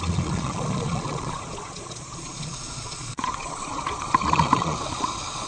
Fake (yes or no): yes